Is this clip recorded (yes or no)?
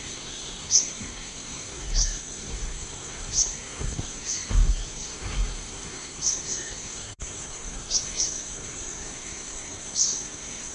no